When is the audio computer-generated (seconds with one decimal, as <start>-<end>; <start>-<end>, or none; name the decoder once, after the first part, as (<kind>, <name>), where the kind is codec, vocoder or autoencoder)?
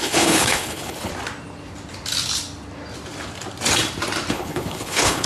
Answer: 0.0-1.1 (codec, HILCodec); 4.3-5.3